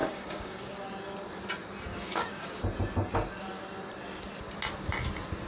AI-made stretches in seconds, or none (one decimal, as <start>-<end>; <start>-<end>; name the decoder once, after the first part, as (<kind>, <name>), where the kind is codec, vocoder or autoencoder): 0.0-1.0 (codec, DAC); 1.9-2.6